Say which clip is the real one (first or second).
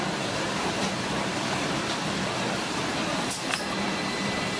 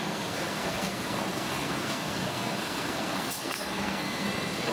first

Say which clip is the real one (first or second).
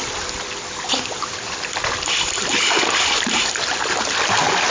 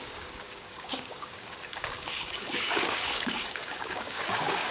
first